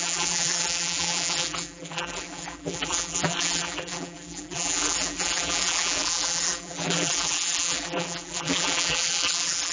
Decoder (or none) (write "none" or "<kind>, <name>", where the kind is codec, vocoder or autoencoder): vocoder, BigVGAN v2